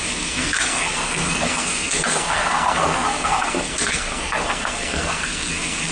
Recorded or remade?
remade